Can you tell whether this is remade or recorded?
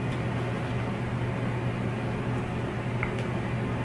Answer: recorded